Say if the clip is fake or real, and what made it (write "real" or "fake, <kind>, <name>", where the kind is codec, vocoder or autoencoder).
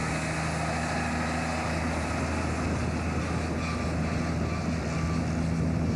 real